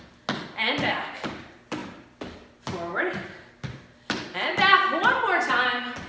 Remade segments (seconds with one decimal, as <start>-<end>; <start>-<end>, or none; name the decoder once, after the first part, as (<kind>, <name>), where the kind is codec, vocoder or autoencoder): none